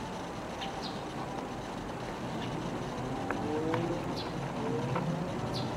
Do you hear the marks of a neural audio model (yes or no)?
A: no